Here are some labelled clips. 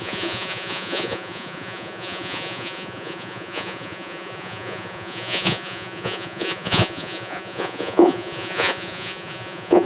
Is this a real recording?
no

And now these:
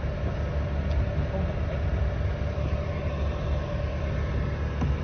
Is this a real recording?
yes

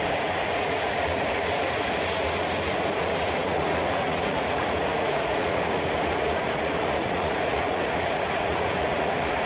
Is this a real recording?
no